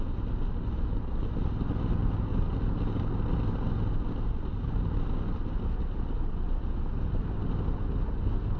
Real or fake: real